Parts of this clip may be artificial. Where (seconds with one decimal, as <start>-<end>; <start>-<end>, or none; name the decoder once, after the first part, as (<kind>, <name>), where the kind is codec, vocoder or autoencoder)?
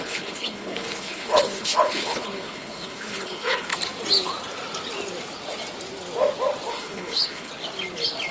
0.0-3.7 (codec, HILCodec); 6.7-7.5